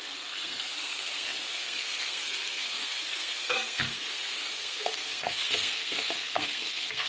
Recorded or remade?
remade